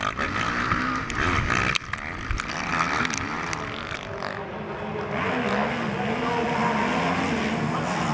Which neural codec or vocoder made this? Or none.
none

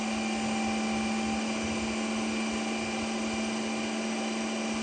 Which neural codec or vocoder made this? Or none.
none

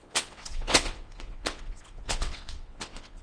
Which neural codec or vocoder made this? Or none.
vocoder, WaveNeXt